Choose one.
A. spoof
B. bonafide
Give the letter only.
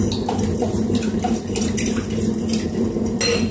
B